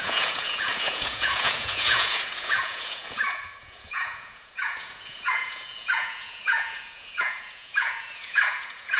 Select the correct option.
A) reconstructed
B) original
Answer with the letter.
A